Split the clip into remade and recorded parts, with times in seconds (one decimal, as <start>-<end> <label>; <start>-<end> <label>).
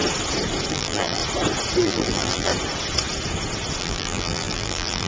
0.0-0.7 recorded; 0.7-1.2 remade; 1.2-1.8 recorded; 1.8-2.5 remade; 2.5-3.8 recorded; 3.8-5.1 remade